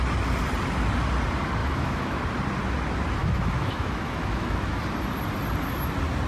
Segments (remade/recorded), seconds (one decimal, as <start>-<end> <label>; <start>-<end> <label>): 0.0-1.6 recorded; 1.6-2.2 remade; 2.2-3.2 recorded; 3.2-4.8 remade; 4.8-6.3 recorded